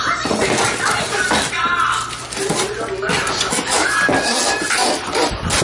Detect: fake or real real